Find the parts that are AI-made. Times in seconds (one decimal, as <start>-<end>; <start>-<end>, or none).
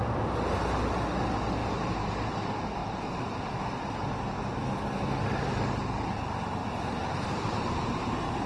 1.6-2.3; 2.8-3.5; 6.6-8.5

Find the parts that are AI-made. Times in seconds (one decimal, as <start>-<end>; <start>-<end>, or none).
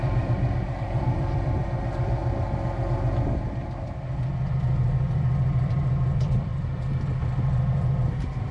0.0-2.2; 4.5-6.5; 7.2-8.5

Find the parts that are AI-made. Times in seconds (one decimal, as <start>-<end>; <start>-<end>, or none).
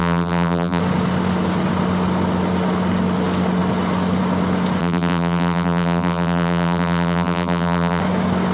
0.0-0.8; 4.8-8.0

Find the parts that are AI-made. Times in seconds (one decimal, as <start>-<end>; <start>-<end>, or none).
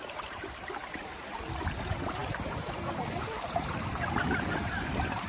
0.0-5.3